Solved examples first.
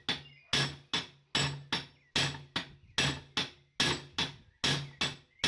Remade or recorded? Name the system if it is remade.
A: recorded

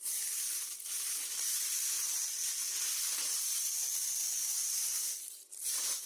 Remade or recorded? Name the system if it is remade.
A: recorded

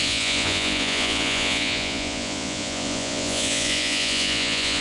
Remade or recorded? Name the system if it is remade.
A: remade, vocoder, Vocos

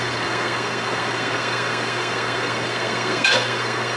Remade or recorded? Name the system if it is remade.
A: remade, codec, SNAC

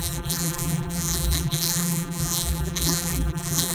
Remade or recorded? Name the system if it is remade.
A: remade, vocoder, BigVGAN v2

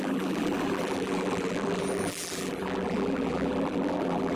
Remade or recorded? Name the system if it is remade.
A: remade, vocoder, BigVGAN v2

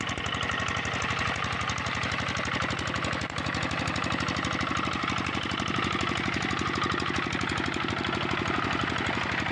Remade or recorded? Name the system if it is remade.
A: recorded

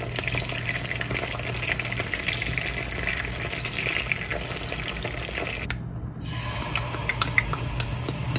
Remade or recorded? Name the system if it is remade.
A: recorded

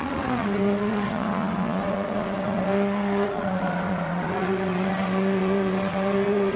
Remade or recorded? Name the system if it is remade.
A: remade, vocoder, Vocos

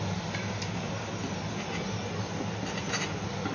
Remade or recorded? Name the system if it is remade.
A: recorded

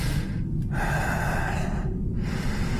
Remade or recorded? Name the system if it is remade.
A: recorded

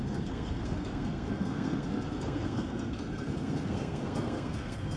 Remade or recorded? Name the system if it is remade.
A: remade, codec, SNAC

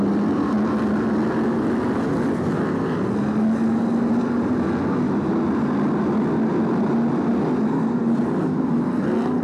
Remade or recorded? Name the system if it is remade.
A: recorded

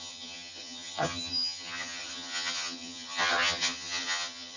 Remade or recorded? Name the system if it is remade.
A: remade, vocoder, HiFi-GAN